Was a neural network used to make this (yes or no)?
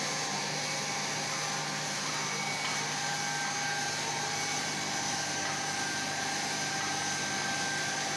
no